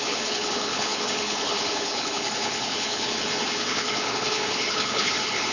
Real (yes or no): no